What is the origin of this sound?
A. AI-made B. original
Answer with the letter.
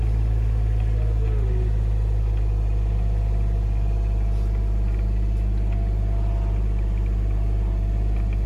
B